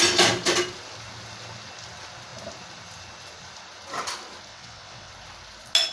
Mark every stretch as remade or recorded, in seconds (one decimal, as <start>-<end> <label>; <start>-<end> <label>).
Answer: 0.0-4.5 recorded; 4.5-5.1 remade; 5.1-5.9 recorded